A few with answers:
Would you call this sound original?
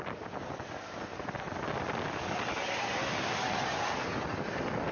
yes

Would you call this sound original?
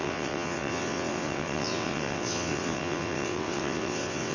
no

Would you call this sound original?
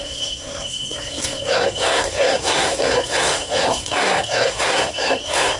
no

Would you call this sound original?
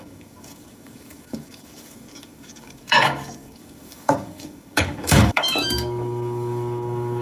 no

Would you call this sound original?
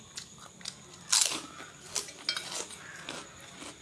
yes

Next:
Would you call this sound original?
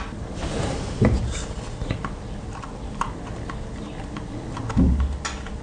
yes